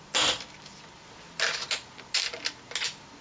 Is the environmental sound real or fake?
real